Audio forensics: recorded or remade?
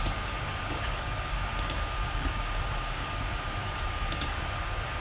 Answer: remade